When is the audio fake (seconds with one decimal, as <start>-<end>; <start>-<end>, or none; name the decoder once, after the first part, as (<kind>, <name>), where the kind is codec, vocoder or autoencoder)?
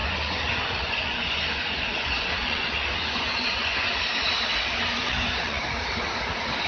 0.0-4.0 (vocoder, Vocos); 5.0-5.6